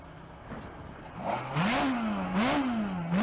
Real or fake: real